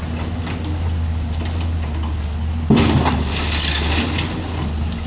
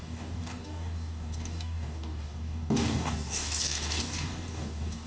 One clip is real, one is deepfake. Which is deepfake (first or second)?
second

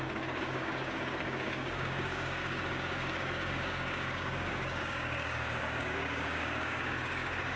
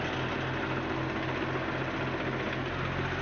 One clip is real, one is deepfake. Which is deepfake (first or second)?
first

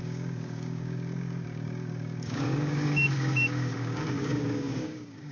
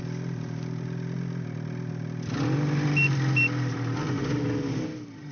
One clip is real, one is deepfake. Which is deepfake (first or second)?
first